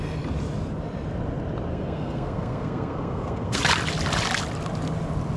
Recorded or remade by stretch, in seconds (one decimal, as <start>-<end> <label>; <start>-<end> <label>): 0.0-1.7 recorded; 1.7-3.6 remade; 3.6-5.4 recorded